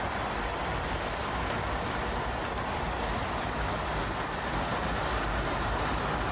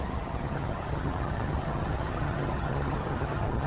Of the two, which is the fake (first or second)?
second